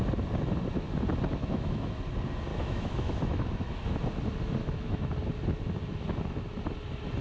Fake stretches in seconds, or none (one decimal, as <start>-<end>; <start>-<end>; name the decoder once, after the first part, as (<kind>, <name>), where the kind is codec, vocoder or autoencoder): 1.4-1.9 (autoencoder, DAC-VAE); 2.5-4.0; 4.6-5.1